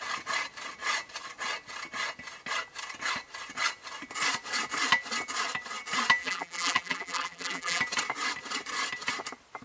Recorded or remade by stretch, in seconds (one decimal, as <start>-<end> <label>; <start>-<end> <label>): 0.0-6.2 recorded; 6.2-7.8 remade; 7.8-9.6 recorded